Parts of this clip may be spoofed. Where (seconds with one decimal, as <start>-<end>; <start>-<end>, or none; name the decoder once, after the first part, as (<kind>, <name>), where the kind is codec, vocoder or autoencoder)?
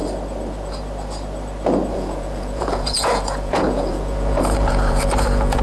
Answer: 1.9-5.6 (vocoder, Vocos)